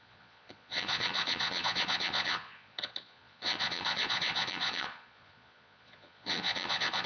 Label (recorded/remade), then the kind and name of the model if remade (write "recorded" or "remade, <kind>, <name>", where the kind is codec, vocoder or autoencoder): remade, vocoder, Vocos